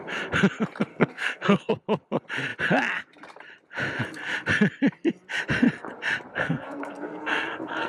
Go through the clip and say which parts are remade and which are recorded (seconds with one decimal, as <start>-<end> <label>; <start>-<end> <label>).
0.0-0.9 recorded; 0.9-1.7 remade; 1.7-6.3 recorded; 6.3-7.9 remade